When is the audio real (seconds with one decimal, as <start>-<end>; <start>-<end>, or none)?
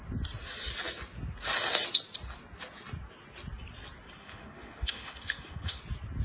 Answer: 0.0-4.2; 5.8-6.2